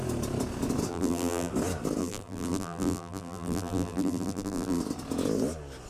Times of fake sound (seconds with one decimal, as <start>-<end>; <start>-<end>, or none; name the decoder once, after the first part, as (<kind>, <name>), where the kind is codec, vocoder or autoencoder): 0.9-1.5 (vocoder, BigVGAN v2); 2.0-4.8